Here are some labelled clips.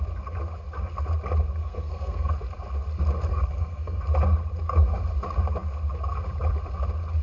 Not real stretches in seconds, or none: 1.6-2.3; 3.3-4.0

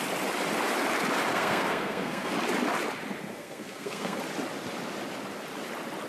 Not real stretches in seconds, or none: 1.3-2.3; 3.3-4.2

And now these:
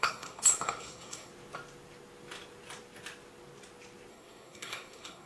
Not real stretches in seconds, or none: 0.0-1.3; 4.1-5.3

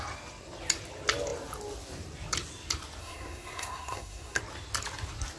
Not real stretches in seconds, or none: 3.0-4.4